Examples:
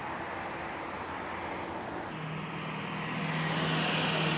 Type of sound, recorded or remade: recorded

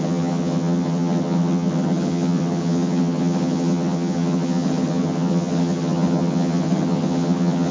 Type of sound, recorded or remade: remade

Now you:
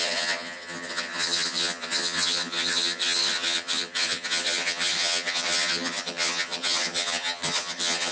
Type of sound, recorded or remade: remade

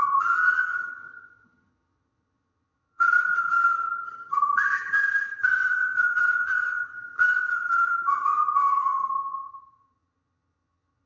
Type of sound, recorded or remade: remade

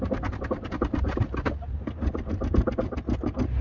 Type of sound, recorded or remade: recorded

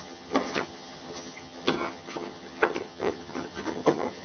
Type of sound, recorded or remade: remade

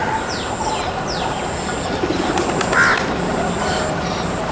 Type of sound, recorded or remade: recorded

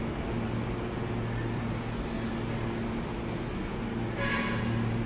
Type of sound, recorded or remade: recorded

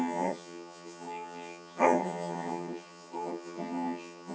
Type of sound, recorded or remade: remade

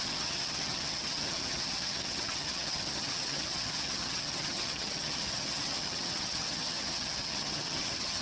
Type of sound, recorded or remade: remade